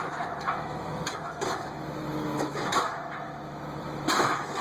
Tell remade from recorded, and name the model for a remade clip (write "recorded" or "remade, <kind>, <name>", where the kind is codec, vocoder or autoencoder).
remade, autoencoder, DAC-VAE